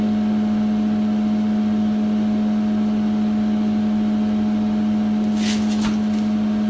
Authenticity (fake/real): real